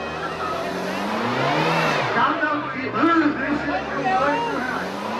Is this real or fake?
real